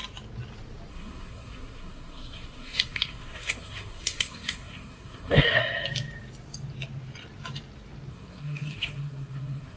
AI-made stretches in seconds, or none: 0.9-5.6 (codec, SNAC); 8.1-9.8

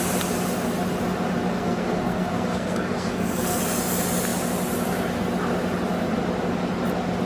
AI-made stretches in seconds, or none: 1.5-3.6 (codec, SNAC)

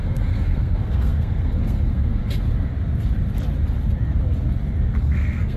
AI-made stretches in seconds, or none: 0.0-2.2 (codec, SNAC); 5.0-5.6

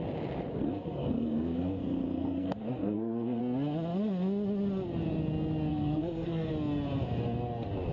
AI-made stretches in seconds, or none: 0.5-3.4 (codec, SNAC); 5.7-6.5